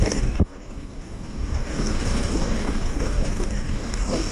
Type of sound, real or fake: fake